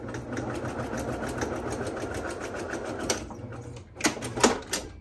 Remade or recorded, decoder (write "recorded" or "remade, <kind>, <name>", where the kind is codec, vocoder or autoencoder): recorded